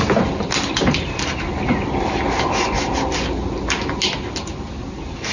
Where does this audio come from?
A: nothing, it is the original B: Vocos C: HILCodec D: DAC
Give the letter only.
A